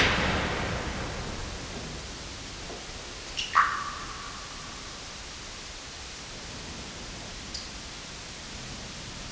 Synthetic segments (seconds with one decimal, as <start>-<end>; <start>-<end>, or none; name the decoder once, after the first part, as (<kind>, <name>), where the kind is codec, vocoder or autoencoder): none